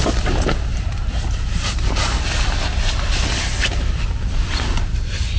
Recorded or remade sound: recorded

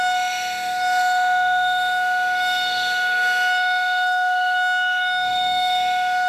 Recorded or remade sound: remade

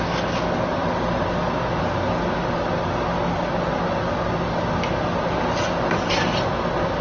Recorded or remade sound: recorded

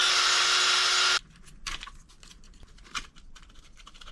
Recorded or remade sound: recorded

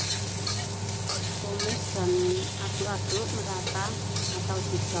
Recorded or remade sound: recorded